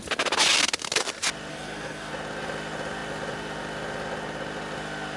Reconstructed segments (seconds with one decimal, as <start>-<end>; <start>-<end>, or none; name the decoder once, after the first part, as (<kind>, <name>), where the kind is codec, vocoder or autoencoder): 1.5-2.1 (codec, SNAC)